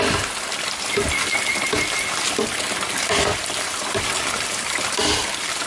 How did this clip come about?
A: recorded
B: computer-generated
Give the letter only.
B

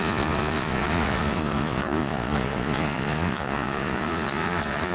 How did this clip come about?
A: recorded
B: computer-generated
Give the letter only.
B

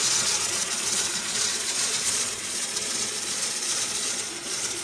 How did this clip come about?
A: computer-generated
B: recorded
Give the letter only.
A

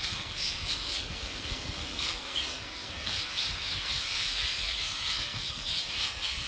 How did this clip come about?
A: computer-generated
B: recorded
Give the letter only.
A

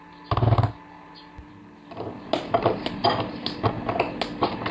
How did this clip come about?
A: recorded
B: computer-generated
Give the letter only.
A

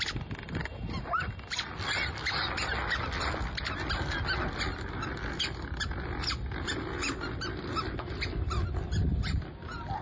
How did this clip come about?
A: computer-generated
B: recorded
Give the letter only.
B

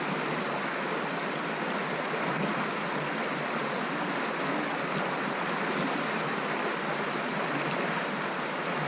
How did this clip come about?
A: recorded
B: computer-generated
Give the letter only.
A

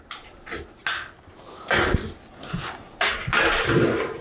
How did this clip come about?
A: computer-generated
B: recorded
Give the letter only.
B